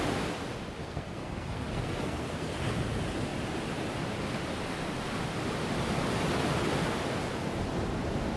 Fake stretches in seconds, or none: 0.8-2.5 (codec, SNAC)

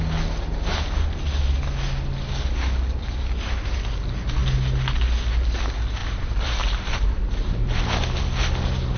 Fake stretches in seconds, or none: 6.0-7.8 (vocoder, BigVGAN v2)

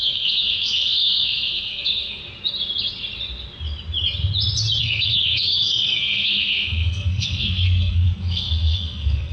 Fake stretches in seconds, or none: 0.0-2.2 (codec, SNAC); 4.8-9.3

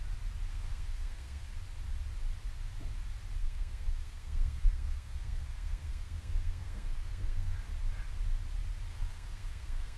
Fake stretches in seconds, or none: 0.5-1.5 (codec, SNAC); 3.4-7.6; 8.9-10.0